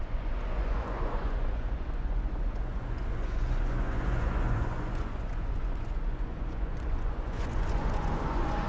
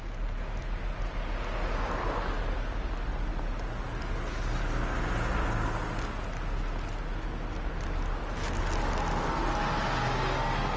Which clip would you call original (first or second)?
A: second